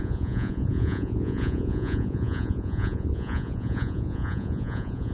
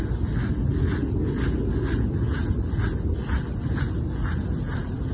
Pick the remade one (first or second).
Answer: first